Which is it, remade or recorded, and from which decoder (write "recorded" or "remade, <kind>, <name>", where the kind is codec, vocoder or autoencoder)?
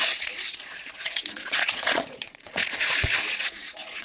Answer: remade, vocoder, Vocos